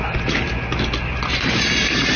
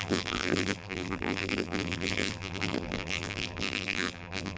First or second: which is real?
first